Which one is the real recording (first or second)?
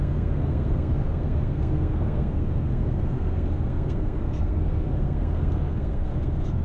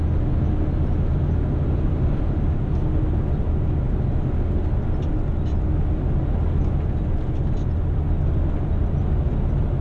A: second